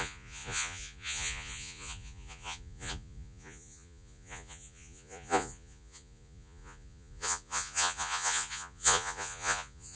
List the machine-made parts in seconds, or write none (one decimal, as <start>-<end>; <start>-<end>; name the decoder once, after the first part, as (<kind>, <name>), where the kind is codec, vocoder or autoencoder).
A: 0.0-10.0 (vocoder, Vocos)